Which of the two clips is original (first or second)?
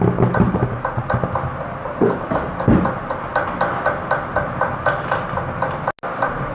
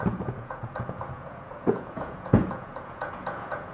first